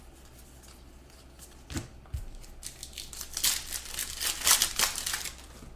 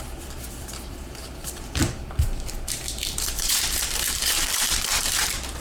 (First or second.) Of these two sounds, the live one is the first